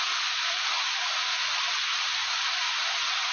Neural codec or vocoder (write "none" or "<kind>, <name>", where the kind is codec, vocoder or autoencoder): vocoder, BigVGAN v2